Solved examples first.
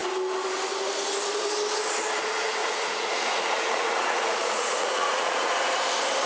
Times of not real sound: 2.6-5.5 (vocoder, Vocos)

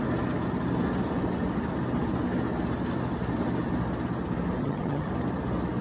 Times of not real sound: 4.6-5.1 (vocoder, HiFi-GAN)

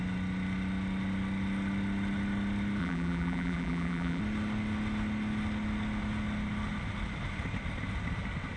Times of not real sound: 2.8-4.2 (vocoder, BigVGAN v2)

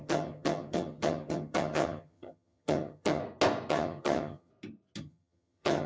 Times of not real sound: 0.0-3.2 (vocoder, HiFi-GAN); 3.7-4.5; 5.0-5.9

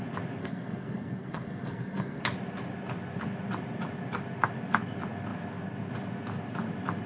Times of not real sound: 0.4-2.2 (codec, SNAC)

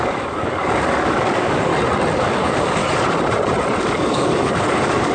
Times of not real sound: 0.0-1.7 (codec, DAC); 2.2-2.8; 3.8-5.1